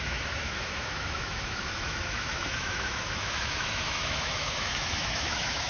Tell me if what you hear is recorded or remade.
remade